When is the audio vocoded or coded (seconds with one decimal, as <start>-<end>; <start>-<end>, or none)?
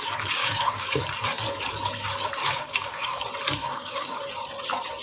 0.4-1.0; 2.4-3.2; 3.6-4.2